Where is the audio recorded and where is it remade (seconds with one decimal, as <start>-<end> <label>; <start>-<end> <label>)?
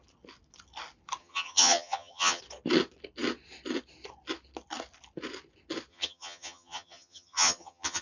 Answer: 0.0-1.2 recorded; 1.2-2.4 remade; 2.4-5.9 recorded; 5.9-8.0 remade